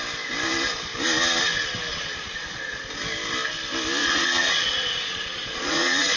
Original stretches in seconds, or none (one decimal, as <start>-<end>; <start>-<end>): 0.0-1.9; 2.8-4.0